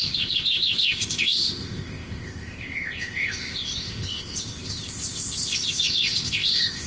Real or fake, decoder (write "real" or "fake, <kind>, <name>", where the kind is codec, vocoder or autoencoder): fake, codec, ZipCodec